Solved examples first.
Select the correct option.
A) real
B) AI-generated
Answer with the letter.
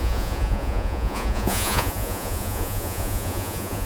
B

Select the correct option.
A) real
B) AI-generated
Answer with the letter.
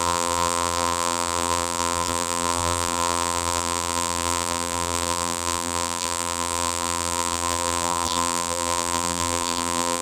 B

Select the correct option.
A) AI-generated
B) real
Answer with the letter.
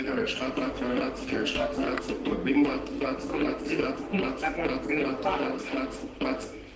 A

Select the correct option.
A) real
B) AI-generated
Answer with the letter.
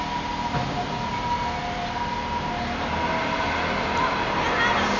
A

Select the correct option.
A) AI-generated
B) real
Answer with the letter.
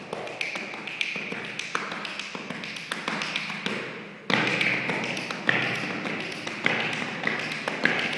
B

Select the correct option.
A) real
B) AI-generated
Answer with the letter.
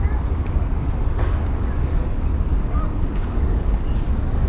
B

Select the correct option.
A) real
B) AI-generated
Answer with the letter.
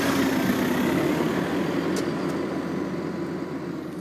A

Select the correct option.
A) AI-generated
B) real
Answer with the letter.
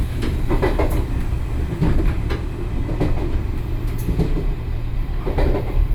B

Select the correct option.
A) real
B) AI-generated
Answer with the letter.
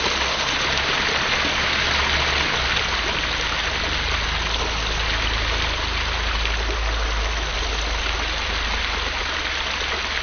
A